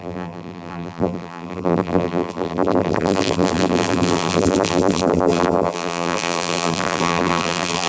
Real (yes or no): no